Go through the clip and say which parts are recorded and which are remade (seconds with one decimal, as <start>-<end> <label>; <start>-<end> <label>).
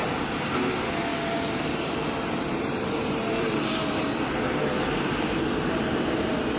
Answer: 0.0-0.7 remade; 0.7-1.1 recorded; 1.1-4.0 remade; 4.0-6.6 recorded